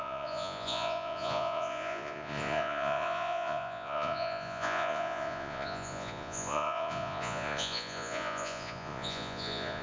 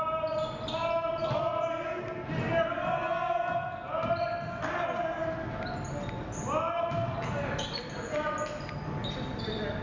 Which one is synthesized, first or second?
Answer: first